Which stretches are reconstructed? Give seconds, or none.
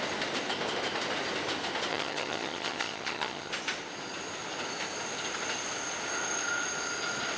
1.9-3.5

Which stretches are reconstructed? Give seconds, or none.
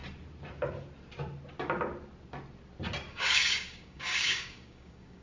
3.1-5.2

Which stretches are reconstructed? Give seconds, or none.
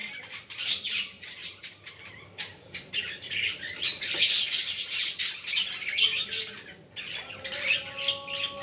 0.0-5.2